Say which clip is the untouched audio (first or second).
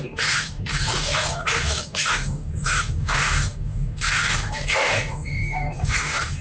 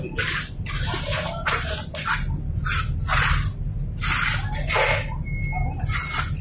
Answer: second